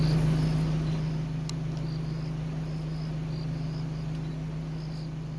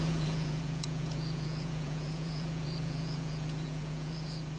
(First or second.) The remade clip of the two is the second